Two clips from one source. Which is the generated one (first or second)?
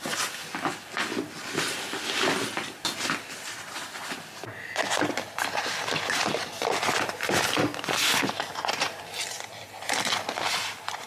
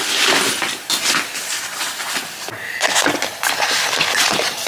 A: second